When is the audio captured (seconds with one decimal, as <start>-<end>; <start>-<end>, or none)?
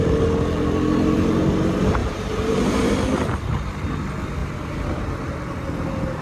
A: 0.0-2.0; 2.9-4.4; 5.0-6.2